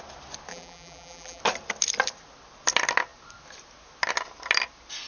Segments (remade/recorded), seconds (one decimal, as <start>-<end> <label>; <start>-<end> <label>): 0.0-0.5 recorded; 0.5-1.4 remade; 1.4-5.1 recorded